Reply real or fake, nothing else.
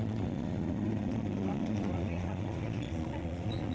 fake